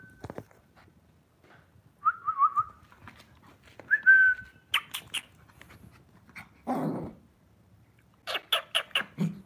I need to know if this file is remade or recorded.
recorded